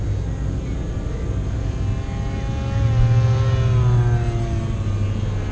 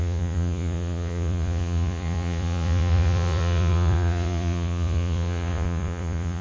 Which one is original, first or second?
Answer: first